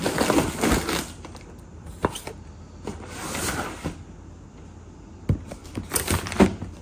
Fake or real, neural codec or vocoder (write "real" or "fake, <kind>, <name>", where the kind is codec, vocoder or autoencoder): real